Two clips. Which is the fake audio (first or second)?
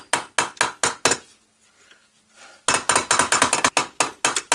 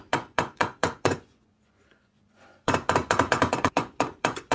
second